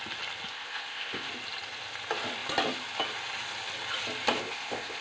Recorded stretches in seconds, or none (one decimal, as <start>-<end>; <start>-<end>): 0.0-0.5; 1.3-4.4